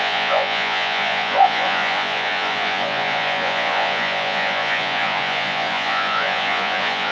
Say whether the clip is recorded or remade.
remade